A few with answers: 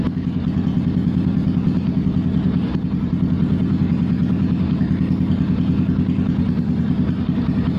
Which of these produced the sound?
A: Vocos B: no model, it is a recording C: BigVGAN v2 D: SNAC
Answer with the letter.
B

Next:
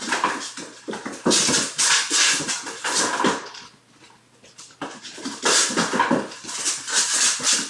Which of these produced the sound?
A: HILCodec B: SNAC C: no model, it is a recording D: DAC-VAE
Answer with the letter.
C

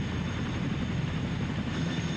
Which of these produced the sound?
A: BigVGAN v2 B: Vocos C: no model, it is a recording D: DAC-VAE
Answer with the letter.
A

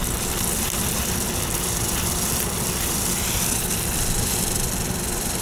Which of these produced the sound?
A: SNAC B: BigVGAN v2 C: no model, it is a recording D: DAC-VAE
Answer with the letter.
B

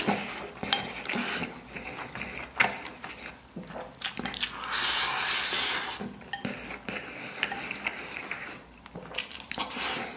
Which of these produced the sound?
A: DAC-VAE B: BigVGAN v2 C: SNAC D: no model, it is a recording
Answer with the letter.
D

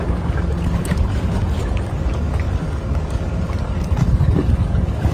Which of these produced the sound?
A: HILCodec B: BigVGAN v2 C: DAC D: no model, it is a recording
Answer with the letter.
C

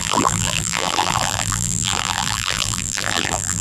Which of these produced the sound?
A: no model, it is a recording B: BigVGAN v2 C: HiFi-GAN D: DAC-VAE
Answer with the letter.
B